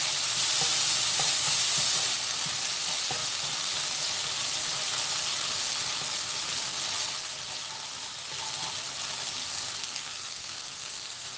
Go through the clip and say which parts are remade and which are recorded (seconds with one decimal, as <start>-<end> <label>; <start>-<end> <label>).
0.0-9.4 recorded; 9.4-11.4 remade